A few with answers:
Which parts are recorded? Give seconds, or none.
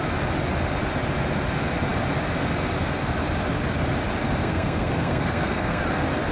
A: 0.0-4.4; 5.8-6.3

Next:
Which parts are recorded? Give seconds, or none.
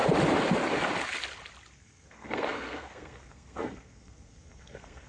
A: 0.0-1.8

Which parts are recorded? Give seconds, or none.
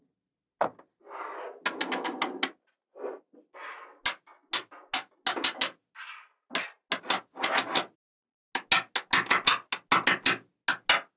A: 0.0-11.2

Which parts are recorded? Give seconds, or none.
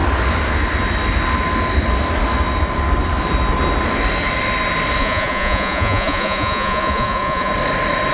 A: 0.0-5.0; 7.5-8.1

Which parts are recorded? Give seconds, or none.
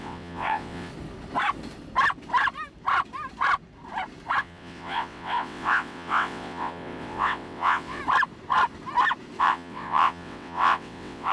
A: 0.9-4.4; 8.0-9.4